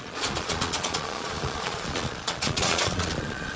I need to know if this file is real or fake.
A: fake